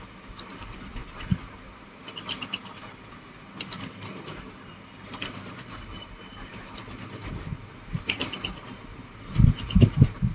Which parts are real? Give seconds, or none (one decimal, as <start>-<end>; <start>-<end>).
0.0-10.3

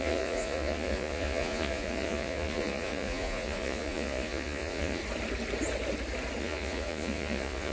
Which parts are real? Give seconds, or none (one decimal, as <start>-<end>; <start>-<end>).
5.0-6.4

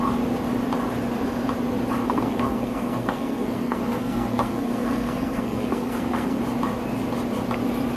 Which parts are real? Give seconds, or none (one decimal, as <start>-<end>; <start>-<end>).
0.0-2.0; 6.4-8.0

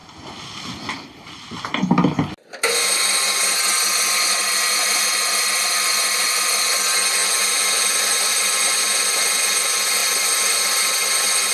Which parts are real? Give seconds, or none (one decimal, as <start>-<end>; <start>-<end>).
0.0-11.5